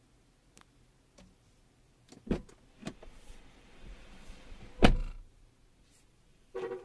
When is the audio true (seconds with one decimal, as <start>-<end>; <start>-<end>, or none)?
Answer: 0.0-2.8; 4.6-6.3